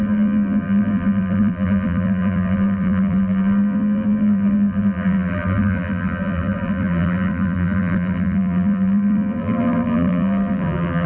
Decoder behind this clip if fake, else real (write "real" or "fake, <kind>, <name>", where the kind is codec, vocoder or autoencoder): fake, vocoder, BigVGAN v2